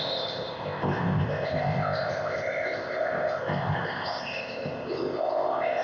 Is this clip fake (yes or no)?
yes